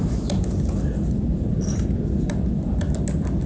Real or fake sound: real